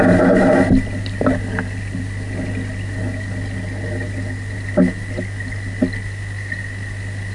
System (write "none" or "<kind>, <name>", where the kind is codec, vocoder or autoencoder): none